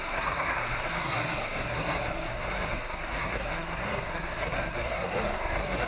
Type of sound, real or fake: fake